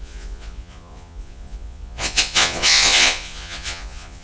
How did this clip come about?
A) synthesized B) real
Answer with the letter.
A